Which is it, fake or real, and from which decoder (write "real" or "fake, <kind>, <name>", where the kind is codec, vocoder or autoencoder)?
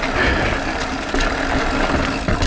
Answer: real